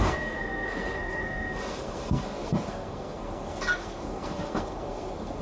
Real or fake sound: fake